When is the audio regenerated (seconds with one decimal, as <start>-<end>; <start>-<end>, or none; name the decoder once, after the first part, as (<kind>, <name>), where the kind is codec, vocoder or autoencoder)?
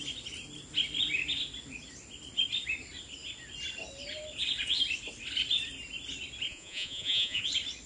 6.5-7.4 (vocoder, Vocos)